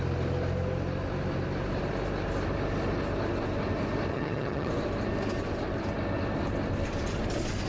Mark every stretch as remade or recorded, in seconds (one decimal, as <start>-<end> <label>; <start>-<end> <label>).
0.0-4.1 recorded; 4.1-4.7 remade; 4.7-7.7 recorded